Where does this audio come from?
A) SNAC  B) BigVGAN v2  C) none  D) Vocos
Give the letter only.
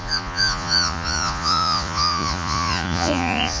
D